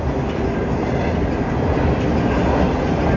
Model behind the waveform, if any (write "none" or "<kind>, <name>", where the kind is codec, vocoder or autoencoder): none